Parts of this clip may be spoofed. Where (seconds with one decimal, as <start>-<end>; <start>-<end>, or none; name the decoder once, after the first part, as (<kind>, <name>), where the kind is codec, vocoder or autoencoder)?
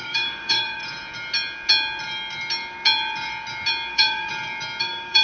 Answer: 0.0-0.8 (codec, DAC); 3.9-4.3; 4.8-5.2